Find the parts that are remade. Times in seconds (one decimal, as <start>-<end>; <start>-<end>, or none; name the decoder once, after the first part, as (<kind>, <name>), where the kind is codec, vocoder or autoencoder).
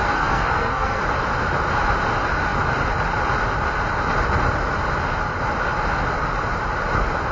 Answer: 0.0-1.0 (codec, SNAC)